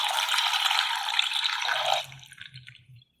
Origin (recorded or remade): remade